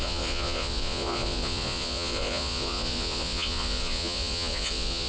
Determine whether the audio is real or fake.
fake